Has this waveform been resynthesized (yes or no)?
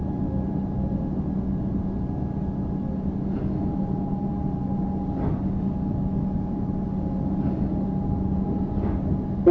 no